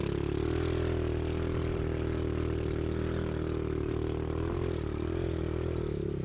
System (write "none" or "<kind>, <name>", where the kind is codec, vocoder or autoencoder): none